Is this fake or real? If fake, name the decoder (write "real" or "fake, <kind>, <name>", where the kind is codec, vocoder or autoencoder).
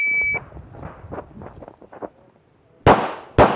real